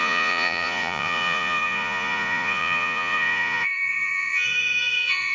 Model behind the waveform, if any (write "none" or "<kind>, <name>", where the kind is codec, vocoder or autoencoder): vocoder, Vocos